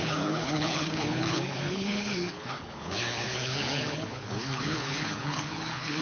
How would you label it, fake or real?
fake